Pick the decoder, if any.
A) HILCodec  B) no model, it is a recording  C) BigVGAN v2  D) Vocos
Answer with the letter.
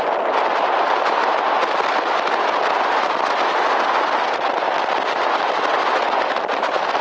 B